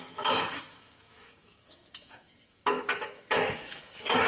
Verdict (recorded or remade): remade